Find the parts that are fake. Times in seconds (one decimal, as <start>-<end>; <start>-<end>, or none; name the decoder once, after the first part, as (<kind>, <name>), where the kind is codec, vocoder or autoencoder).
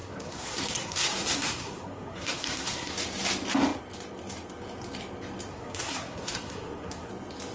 0.0-2.9 (codec, SNAC); 5.5-7.1